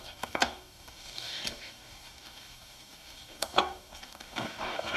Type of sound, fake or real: fake